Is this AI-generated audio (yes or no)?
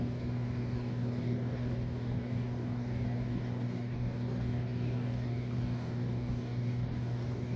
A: yes